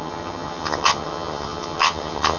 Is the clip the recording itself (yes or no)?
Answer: no